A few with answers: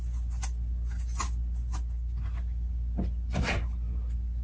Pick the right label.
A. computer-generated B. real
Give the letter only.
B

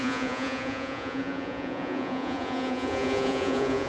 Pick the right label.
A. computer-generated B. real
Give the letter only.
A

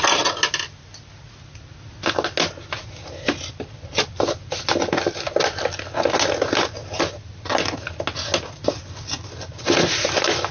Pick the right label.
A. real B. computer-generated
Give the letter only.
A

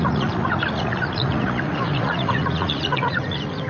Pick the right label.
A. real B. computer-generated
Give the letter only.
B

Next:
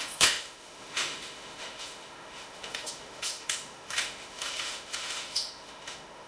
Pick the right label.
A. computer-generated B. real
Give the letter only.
A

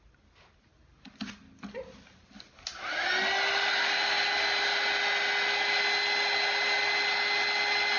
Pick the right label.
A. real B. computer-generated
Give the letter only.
A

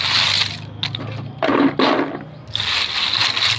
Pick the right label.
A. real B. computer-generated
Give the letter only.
A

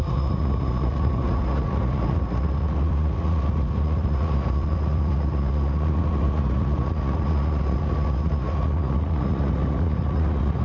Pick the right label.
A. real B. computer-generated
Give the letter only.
B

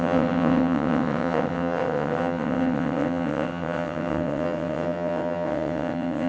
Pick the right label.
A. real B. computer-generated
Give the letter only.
B